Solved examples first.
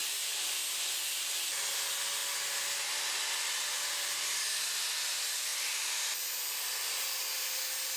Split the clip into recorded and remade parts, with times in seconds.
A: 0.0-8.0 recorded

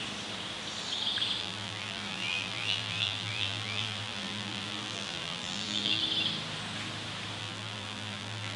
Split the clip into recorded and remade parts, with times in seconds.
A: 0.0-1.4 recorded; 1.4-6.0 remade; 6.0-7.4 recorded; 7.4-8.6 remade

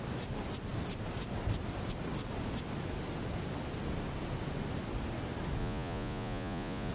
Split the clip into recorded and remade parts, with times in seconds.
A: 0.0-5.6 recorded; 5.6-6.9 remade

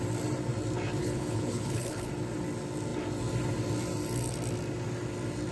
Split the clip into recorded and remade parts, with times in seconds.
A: 0.0-1.0 recorded; 1.0-2.1 remade; 2.1-5.5 recorded

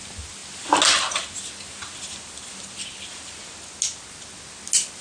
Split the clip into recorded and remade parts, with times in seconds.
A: 0.0-5.0 recorded

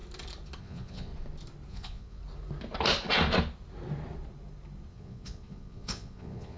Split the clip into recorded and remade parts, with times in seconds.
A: 0.0-0.6 recorded; 0.6-1.1 remade; 1.1-1.7 recorded; 1.7-2.2 remade; 2.2-4.9 recorded; 4.9-6.6 remade